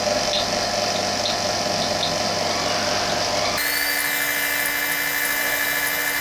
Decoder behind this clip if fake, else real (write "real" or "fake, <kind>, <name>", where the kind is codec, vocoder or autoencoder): real